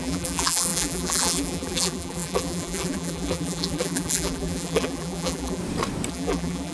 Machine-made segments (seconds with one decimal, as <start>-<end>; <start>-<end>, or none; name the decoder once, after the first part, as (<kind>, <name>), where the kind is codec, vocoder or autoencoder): 0.0-5.6 (vocoder, BigVGAN v2); 6.1-6.7